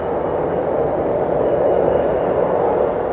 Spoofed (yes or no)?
no